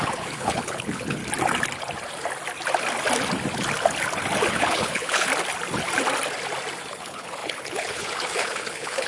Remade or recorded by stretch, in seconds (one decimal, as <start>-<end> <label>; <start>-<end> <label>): 0.0-1.2 remade; 1.2-4.5 recorded; 4.5-5.3 remade; 5.3-6.9 recorded; 6.9-9.1 remade